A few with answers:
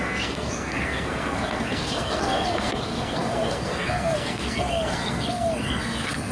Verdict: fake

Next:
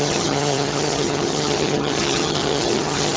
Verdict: fake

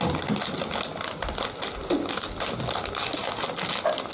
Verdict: real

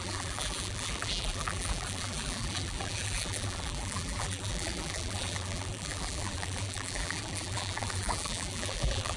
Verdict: fake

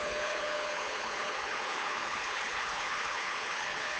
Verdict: fake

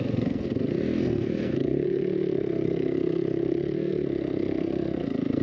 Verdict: fake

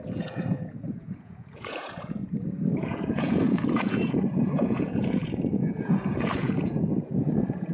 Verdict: fake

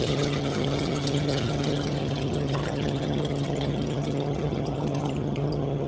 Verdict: fake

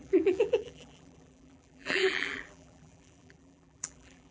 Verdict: fake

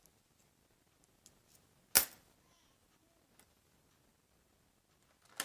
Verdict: real